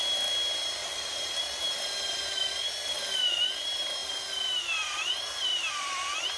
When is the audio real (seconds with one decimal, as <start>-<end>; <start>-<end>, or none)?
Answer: 0.0-0.8; 1.4-6.4